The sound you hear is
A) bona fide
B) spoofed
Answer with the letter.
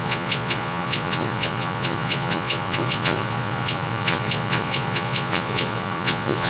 B